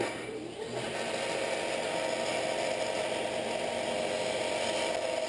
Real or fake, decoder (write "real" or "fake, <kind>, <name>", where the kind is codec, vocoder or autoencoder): real